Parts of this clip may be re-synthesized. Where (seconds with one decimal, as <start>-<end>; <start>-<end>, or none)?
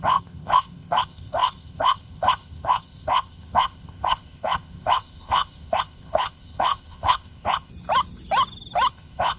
0.0-7.7; 8.9-9.4